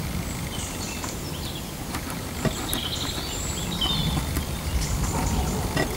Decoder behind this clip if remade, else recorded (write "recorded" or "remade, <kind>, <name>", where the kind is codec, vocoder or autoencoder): recorded